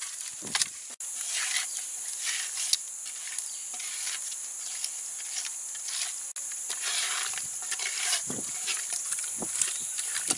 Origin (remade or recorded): recorded